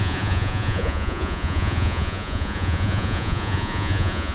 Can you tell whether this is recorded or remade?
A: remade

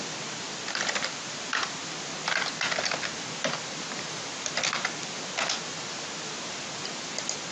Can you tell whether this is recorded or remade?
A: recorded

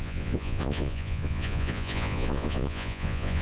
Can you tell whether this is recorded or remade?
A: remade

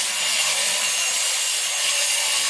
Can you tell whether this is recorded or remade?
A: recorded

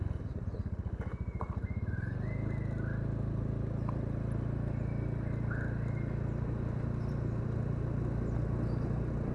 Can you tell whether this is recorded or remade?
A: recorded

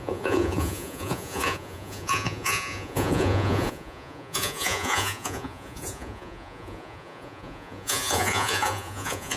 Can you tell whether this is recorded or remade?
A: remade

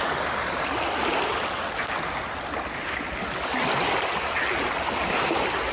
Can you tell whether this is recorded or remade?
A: recorded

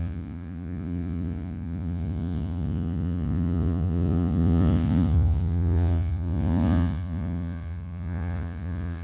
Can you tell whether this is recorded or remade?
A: remade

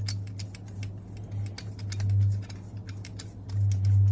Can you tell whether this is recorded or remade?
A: recorded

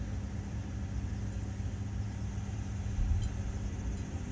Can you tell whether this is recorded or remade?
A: recorded